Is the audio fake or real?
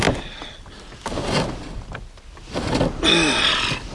real